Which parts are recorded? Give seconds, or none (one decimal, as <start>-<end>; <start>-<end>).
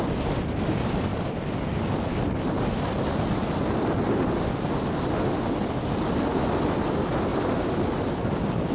0.0-8.7